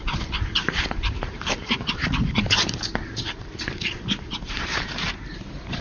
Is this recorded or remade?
remade